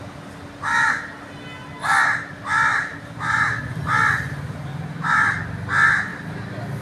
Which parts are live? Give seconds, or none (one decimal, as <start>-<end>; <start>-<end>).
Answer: 0.0-6.8